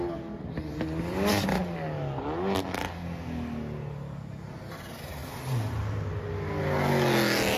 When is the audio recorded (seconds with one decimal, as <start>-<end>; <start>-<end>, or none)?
0.0-7.6